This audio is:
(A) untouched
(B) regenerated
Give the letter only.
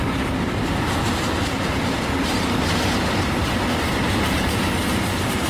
A